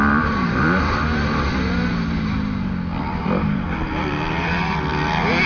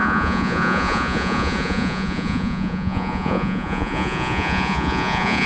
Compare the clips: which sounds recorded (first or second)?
first